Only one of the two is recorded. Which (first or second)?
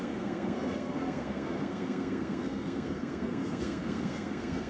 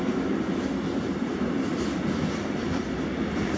second